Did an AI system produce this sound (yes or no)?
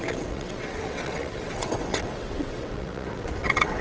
yes